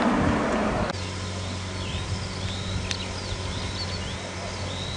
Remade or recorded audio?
recorded